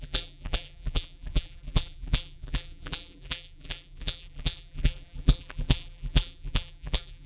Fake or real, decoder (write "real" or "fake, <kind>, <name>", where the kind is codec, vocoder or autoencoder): fake, vocoder, BigVGAN v2